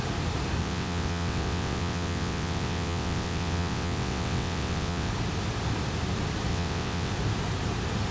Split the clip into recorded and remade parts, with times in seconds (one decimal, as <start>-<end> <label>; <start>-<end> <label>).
0.0-0.6 recorded; 0.6-5.1 remade; 5.1-6.5 recorded; 6.5-7.1 remade; 7.1-8.1 recorded